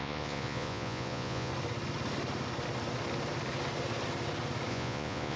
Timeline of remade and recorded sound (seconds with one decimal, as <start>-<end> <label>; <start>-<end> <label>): 0.0-1.5 remade; 1.5-4.7 recorded; 4.7-5.4 remade